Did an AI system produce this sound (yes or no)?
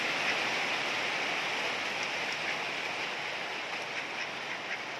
no